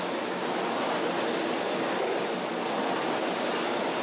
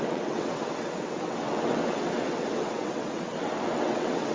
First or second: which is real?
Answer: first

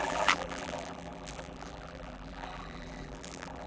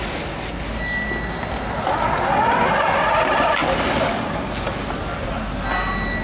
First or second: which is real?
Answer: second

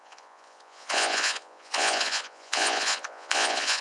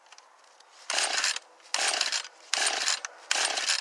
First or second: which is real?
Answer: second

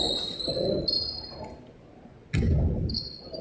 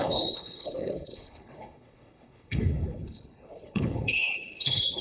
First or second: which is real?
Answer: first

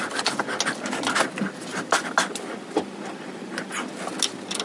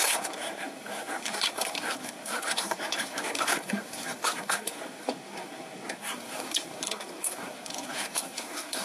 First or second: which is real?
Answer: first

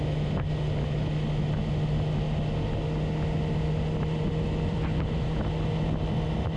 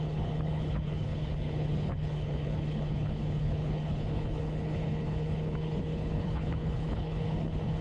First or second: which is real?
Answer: first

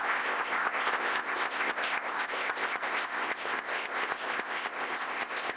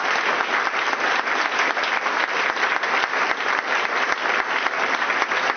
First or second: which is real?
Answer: second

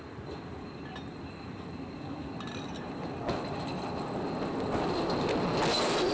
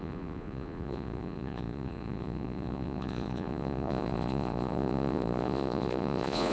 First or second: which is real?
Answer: first